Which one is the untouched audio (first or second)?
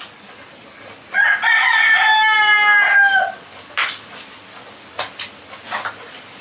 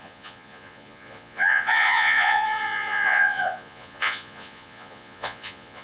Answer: first